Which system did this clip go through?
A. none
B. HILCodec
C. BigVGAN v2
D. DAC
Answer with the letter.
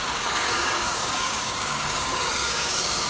D